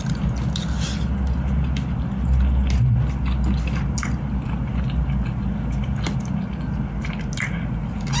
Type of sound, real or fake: real